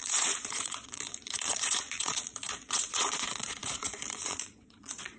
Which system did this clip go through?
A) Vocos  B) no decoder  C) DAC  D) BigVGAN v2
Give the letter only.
A